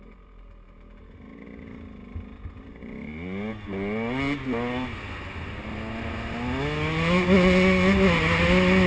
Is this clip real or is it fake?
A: real